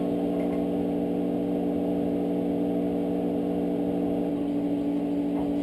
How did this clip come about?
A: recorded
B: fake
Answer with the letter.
A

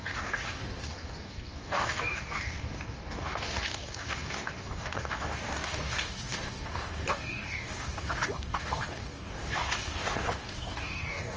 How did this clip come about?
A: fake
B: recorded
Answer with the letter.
A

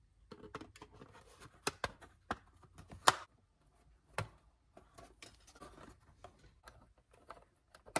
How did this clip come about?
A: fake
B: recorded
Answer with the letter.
B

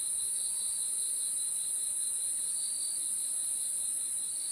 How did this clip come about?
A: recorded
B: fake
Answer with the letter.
A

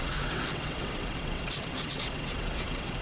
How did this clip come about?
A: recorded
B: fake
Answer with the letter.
B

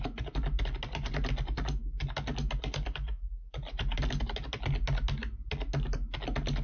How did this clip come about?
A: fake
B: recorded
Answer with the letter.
B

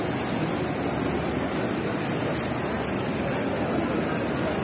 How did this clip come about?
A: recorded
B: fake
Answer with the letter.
A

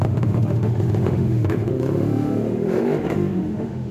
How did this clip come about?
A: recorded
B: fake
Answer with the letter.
B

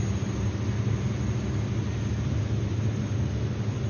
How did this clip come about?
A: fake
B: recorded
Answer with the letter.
B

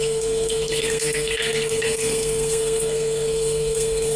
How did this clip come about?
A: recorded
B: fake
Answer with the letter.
B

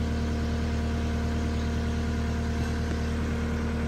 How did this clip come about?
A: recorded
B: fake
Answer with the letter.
A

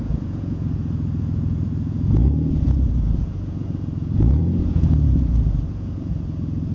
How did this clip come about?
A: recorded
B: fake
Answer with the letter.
B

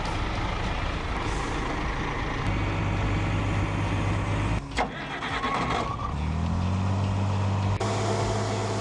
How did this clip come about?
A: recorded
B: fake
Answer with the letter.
A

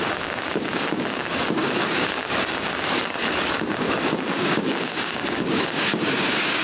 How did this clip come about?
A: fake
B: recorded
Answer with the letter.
A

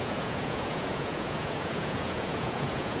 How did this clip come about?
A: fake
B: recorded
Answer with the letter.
A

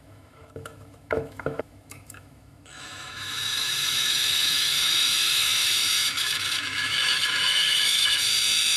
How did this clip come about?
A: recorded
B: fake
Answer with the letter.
B